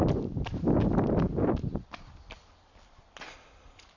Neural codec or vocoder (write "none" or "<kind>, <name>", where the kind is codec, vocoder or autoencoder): none